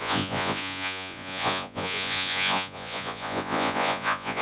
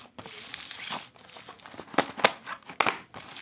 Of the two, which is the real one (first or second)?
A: second